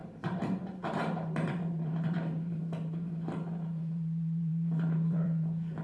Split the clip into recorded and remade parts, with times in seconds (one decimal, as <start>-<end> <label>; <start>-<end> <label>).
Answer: 0.0-5.8 remade